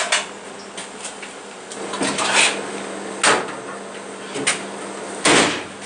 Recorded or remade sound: recorded